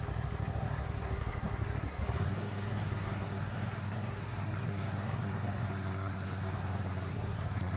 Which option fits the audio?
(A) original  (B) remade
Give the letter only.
B